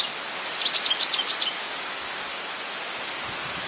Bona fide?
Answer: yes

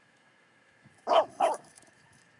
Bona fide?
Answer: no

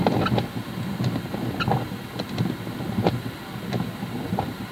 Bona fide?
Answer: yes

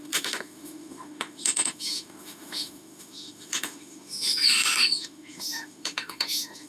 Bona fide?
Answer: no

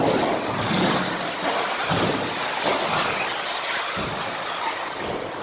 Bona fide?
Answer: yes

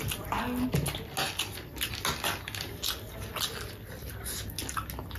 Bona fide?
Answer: yes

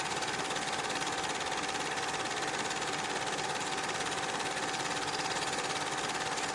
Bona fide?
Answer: yes